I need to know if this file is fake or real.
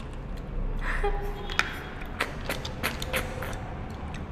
real